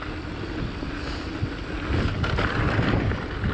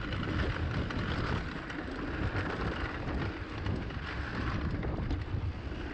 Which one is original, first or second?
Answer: second